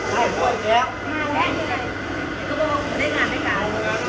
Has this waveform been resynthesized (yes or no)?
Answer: no